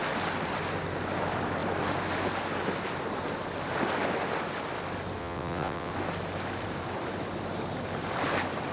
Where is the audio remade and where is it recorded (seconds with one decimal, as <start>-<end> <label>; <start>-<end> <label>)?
0.0-5.2 recorded; 5.2-5.9 remade; 5.9-8.7 recorded